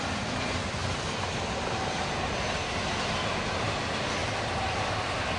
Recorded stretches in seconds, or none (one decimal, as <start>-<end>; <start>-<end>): 0.0-5.4

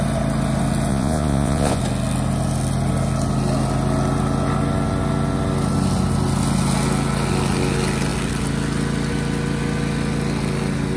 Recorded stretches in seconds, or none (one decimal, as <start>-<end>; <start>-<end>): 0.0-0.9; 1.8-11.0

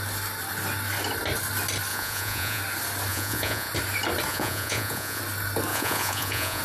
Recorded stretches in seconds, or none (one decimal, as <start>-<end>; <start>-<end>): 0.0-1.9; 2.6-3.1; 3.7-4.3; 5.2-5.7

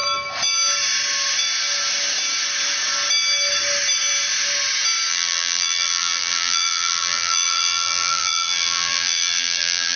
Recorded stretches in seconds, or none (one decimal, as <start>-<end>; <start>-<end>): 0.0-5.1

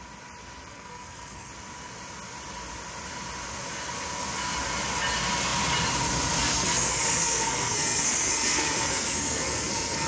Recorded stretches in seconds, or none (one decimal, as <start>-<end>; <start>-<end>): 0.0-0.7; 1.5-6.5

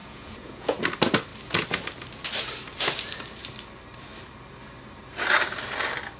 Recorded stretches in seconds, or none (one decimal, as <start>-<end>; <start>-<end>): 0.8-6.2

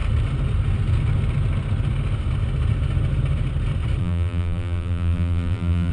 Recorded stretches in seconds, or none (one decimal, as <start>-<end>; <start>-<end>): 0.0-4.0